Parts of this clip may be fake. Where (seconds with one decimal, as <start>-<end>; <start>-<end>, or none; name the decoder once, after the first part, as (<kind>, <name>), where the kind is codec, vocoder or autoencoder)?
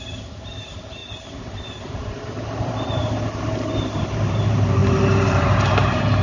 0.0-3.0 (vocoder, BigVGAN v2); 4.0-6.2